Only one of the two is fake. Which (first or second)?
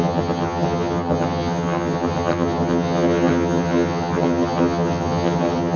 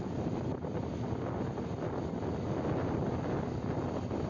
first